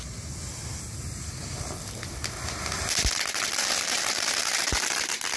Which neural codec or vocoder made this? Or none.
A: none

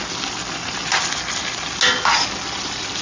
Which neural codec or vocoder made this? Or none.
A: none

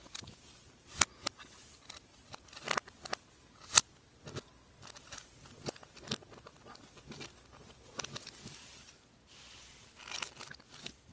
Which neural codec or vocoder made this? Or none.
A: none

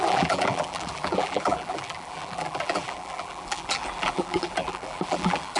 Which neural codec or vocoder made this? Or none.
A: vocoder, BigVGAN v2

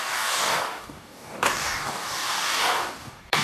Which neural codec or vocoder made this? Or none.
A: codec, DAC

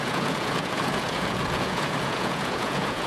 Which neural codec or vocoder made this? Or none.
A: vocoder, Vocos